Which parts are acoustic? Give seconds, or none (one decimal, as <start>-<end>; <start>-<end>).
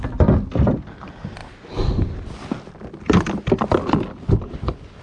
0.0-5.0